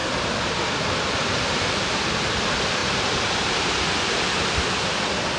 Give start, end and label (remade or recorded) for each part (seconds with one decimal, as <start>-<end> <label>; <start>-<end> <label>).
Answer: 0.0-5.4 remade